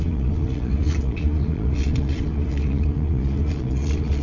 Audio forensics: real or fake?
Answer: fake